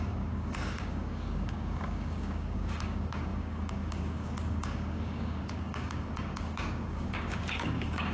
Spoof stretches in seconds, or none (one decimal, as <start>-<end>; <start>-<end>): 0.0-8.1